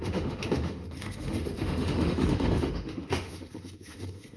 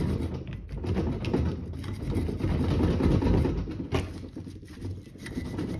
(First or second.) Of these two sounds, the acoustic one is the second